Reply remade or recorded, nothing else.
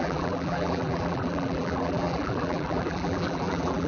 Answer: remade